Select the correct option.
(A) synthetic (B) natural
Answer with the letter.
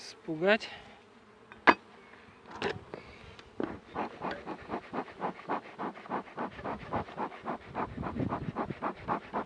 B